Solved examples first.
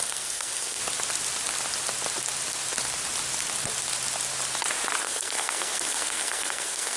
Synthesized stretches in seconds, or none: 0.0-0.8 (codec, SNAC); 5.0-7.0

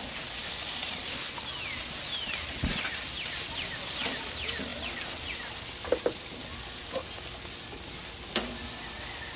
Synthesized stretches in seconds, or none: none

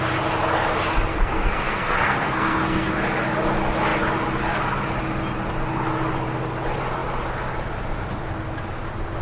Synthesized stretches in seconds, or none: 1.1-2.9 (codec, SNAC)

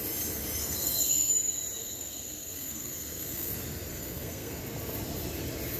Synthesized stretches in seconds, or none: 0.6-1.3 (codec, SNAC); 1.8-3.5; 3.9-4.6

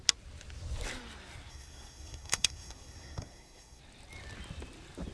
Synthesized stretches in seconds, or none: 1.5-3.8 (codec, SNAC)

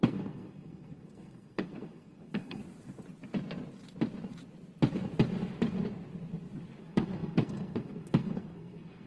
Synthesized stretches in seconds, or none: 0.0-2.6 (codec, SNAC); 6.8-9.1

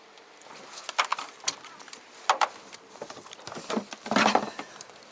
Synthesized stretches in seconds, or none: none

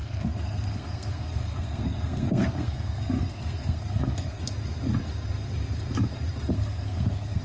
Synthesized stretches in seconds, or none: 0.0-4.4 (codec, SNAC); 6.5-7.4